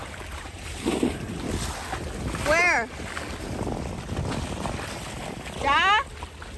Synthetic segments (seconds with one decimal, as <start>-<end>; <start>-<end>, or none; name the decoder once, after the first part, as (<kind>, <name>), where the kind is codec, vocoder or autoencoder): 0.0-1.5 (vocoder, BigVGAN v2)